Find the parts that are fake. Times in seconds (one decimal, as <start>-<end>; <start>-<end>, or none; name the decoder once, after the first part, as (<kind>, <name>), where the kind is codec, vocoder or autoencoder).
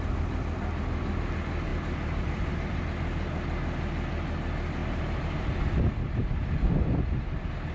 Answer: 1.7-2.8 (vocoder, BigVGAN v2); 4.8-5.7